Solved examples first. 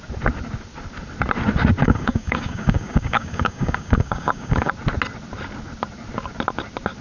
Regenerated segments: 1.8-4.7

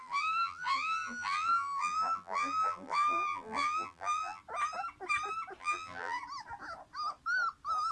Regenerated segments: 0.0-4.4; 5.6-6.2

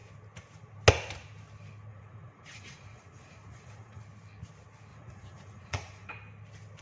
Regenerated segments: 1.9-4.0; 4.9-6.1